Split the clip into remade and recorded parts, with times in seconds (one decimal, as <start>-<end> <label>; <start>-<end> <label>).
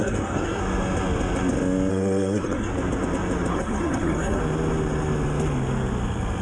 0.0-0.6 remade; 0.6-1.9 recorded; 1.9-2.7 remade; 2.7-3.5 recorded; 3.5-4.4 remade; 4.4-6.4 recorded